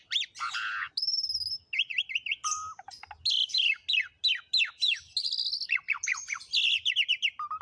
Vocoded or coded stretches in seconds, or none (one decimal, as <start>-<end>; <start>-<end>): none